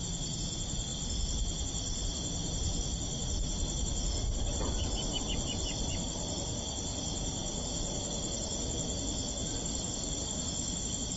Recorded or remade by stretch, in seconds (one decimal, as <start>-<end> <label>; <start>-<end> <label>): 0.0-0.9 recorded; 0.9-5.2 remade; 5.2-7.2 recorded; 7.2-8.1 remade; 8.1-11.2 recorded